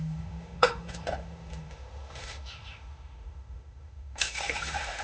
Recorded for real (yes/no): no